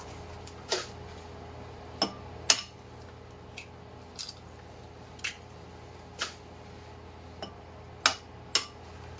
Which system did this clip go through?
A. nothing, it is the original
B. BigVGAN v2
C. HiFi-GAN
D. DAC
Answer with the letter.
A